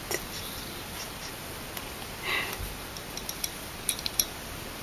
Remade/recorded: recorded